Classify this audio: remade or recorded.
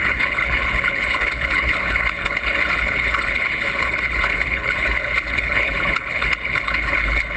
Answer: remade